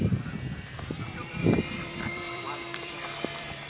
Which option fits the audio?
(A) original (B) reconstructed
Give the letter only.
B